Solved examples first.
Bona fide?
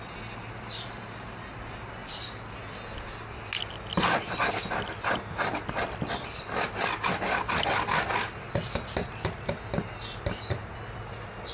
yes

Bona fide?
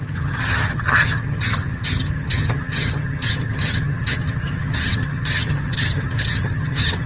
no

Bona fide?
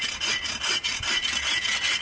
yes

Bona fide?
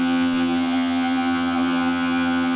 no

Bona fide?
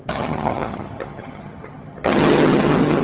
no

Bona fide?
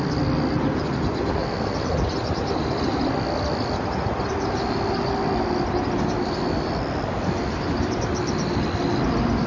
yes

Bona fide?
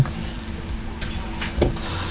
yes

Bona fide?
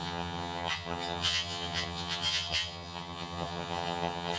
no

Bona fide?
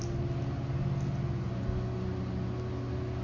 yes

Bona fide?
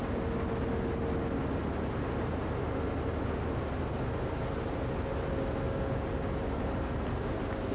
yes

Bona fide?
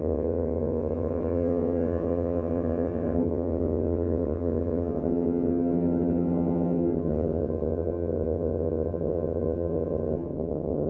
no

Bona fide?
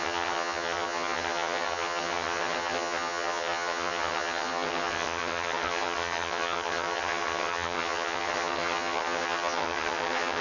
no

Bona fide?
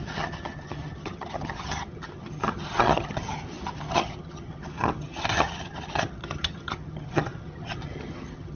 no